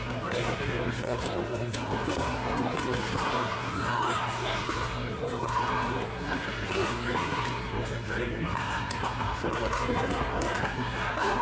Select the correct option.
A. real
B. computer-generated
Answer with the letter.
B